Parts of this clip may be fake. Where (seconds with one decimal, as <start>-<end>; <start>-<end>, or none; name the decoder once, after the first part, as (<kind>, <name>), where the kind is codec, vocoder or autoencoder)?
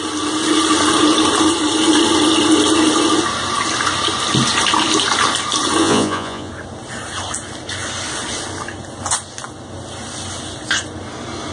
5.8-6.5 (vocoder, Vocos)